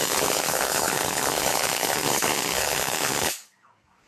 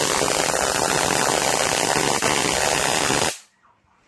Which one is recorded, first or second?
second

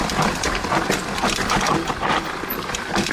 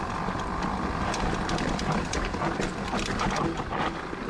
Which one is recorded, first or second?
second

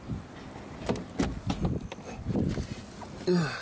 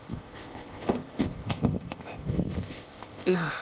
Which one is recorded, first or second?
first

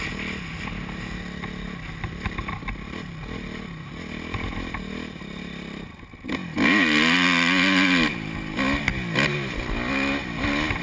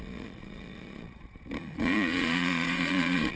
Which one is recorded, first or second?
first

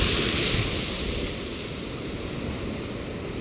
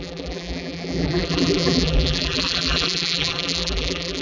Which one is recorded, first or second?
first